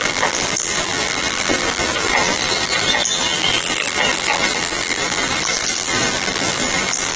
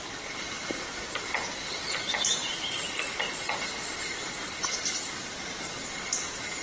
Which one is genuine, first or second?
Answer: second